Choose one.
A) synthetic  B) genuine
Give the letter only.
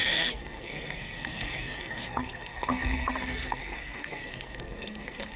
A